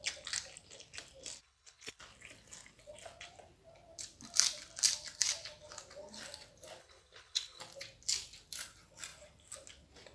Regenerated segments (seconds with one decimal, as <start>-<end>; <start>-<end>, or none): 1.4-2.0; 6.8-7.6